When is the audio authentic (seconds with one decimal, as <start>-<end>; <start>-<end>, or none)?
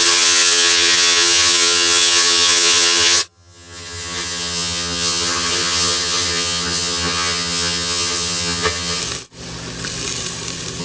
9.0-10.8